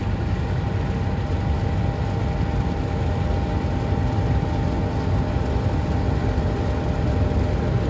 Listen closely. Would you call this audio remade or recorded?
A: recorded